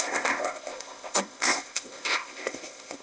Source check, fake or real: fake